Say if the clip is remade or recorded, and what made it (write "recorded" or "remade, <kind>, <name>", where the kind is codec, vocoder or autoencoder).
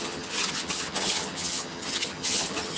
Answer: remade, vocoder, HiFi-GAN